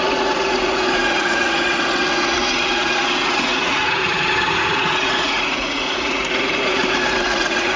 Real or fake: fake